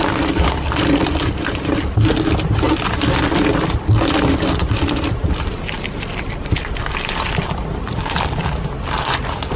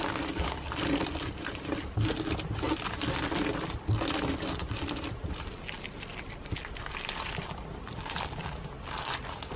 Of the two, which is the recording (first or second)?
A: second